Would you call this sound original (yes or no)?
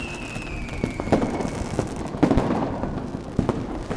yes